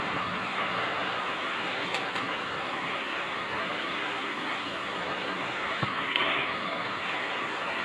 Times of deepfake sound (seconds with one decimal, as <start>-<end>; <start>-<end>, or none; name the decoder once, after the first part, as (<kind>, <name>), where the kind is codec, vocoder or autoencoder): 0.0-7.8 (codec, SNAC)